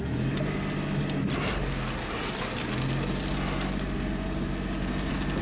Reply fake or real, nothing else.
real